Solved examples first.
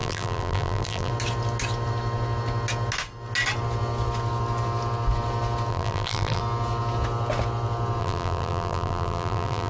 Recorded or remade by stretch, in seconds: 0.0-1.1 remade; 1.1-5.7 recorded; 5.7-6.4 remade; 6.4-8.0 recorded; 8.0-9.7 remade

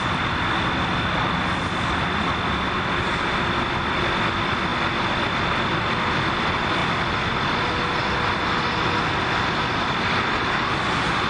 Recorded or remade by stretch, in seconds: 0.0-11.3 recorded

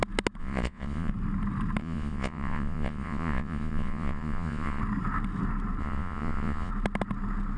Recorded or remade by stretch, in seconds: 0.0-0.4 recorded; 0.4-1.1 remade; 1.1-1.8 recorded; 1.8-4.8 remade; 4.8-5.8 recorded; 5.8-6.7 remade; 6.7-7.6 recorded

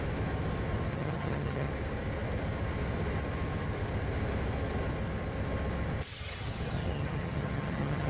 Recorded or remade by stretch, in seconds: 0.0-0.9 recorded; 0.9-1.7 remade; 1.7-6.1 recorded; 6.1-8.1 remade

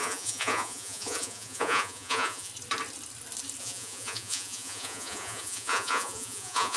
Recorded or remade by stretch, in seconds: 0.0-2.5 remade; 2.5-3.6 recorded; 3.6-6.8 remade

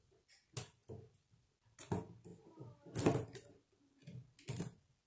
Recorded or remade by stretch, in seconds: 0.0-5.1 recorded

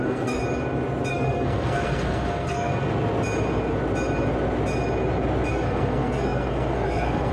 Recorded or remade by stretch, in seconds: 0.0-0.4 remade; 0.4-1.1 recorded; 1.1-2.7 remade; 2.7-5.5 recorded; 5.5-7.3 remade